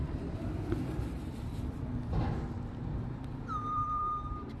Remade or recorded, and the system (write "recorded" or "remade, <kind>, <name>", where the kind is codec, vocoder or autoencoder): remade, vocoder, BigVGAN v2